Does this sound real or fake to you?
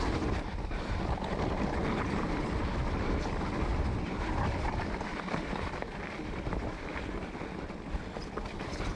fake